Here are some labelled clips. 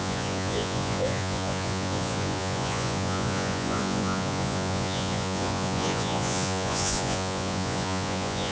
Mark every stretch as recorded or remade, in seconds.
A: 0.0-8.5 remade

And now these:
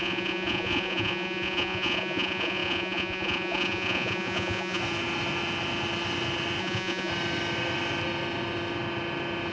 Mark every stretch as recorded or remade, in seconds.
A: 0.0-4.8 remade; 4.8-6.6 recorded; 6.6-7.1 remade; 7.1-9.5 recorded

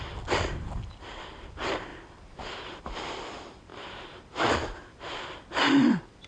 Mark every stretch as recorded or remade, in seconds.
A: 0.0-6.3 recorded

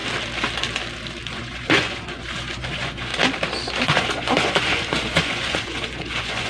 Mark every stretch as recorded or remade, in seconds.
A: 0.0-1.3 recorded; 1.3-3.1 remade; 3.1-3.8 recorded; 3.8-6.5 remade